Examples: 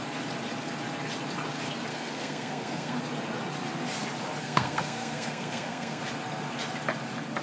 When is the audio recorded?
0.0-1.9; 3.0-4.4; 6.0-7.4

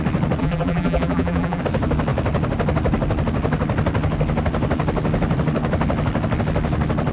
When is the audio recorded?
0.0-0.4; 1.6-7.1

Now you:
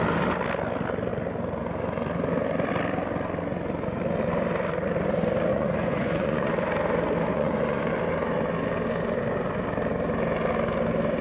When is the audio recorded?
0.0-5.5; 6.5-7.3; 7.9-11.2

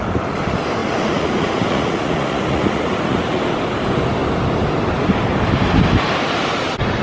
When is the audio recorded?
0.0-0.8; 3.4-7.0

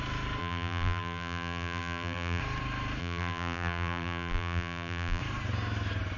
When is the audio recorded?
0.0-0.4; 2.4-3.0; 5.2-6.2

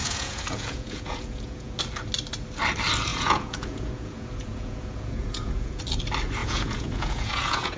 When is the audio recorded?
1.8-3.1; 5.8-6.4